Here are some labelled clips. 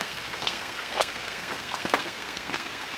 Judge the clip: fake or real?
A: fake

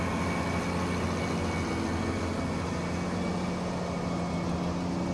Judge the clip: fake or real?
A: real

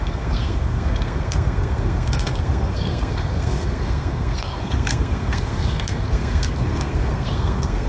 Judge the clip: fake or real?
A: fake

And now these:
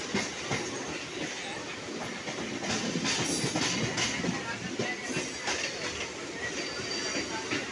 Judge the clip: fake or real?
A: real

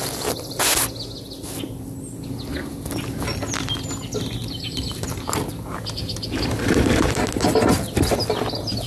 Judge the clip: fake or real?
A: real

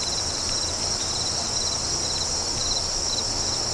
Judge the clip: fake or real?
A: real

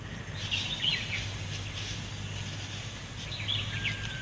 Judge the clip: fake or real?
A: real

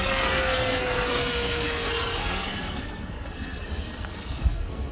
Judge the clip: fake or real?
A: fake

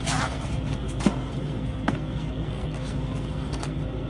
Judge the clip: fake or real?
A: fake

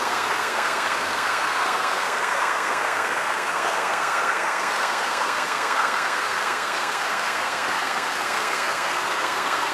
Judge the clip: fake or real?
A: fake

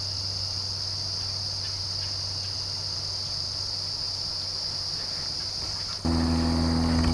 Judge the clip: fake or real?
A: real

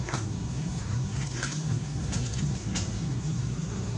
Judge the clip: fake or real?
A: fake